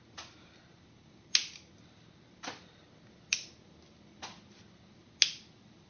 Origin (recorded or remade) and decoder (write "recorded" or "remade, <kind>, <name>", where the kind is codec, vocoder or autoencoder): recorded